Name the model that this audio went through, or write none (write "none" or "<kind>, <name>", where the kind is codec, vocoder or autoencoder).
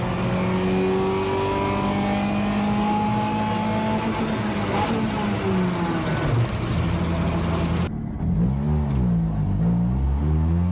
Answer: none